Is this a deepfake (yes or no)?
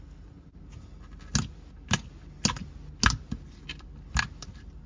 no